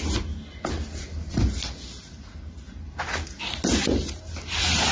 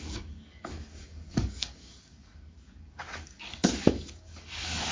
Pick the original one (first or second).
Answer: first